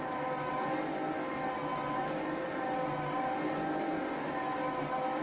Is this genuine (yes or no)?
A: yes